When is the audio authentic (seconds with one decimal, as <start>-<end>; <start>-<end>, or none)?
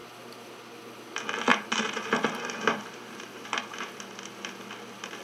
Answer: 0.0-1.5; 3.5-5.2